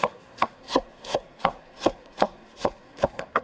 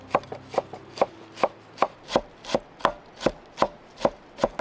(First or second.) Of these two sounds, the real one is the second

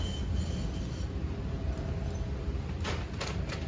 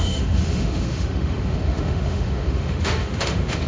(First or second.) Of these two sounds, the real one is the first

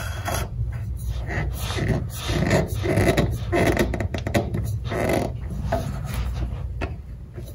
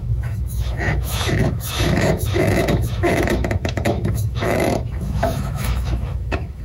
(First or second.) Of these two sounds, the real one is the first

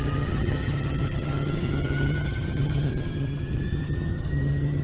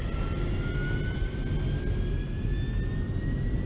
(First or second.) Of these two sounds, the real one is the second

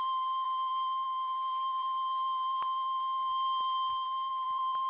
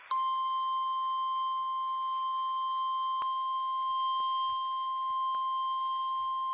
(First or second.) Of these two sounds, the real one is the second